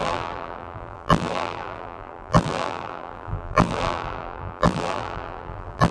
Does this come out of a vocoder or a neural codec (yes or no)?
yes